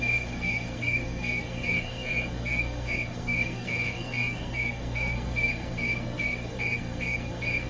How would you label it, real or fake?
fake